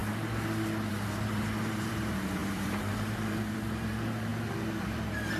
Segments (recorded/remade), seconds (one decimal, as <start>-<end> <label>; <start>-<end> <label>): 0.0-0.9 recorded; 0.9-4.3 remade; 4.3-4.8 recorded; 4.8-5.4 remade

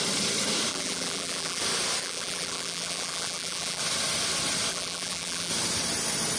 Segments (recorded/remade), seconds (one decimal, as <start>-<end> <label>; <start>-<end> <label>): 0.0-0.7 recorded; 0.7-1.6 remade; 1.6-2.0 recorded; 2.0-3.8 remade; 3.8-4.7 recorded; 4.7-5.5 remade; 5.5-6.4 recorded

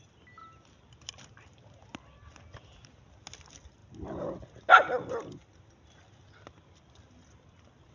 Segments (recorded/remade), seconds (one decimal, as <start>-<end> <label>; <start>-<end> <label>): 0.0-7.9 recorded

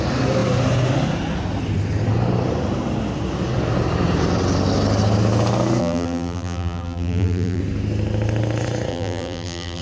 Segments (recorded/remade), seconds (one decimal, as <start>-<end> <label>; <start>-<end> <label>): 0.0-5.8 recorded; 5.8-7.6 remade; 7.6-8.9 recorded; 8.9-9.8 remade